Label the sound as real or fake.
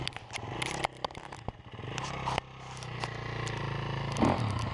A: real